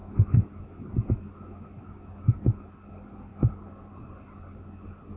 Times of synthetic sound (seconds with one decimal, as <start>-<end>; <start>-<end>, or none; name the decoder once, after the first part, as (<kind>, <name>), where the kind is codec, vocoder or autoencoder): 0.0-2.7 (autoencoder, DAC-VAE)